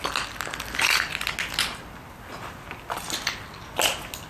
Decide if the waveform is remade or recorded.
recorded